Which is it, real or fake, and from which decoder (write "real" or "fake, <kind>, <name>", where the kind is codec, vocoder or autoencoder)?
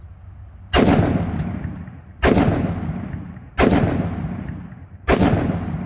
real